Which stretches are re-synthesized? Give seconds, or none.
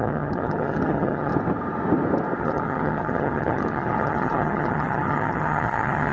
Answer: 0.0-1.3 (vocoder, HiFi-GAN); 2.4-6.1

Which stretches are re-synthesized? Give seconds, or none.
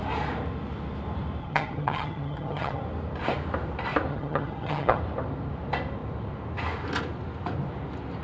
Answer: 1.4-2.8 (vocoder, HiFi-GAN); 4.1-5.0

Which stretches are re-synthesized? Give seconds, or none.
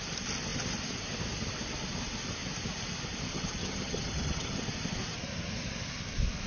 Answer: 3.3-4.6 (vocoder, HiFi-GAN)